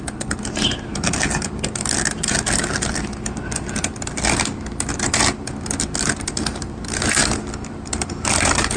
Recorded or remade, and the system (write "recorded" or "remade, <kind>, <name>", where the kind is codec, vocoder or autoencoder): recorded